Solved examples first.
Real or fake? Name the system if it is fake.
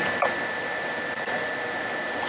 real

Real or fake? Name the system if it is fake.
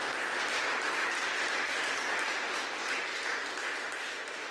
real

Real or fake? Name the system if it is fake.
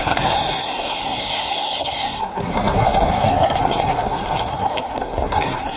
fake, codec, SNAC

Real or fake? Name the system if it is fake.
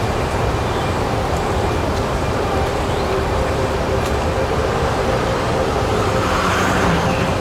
fake, vocoder, BigVGAN v2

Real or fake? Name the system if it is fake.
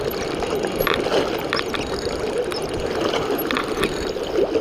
real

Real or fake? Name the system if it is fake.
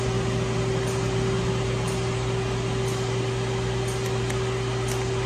real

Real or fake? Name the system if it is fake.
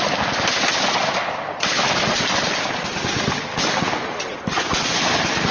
real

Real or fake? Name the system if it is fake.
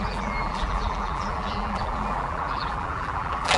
fake, vocoder, BigVGAN v2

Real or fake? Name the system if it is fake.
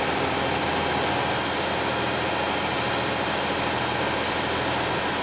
real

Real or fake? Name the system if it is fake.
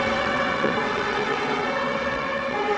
fake, vocoder, WaveNeXt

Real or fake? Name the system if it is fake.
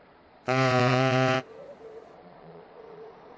fake, vocoder, Vocos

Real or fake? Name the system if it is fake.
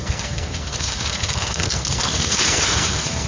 fake, codec, SNAC